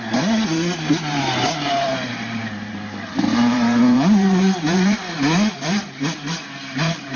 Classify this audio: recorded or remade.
remade